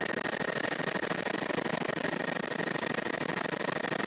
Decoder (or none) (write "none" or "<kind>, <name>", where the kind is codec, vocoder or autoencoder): none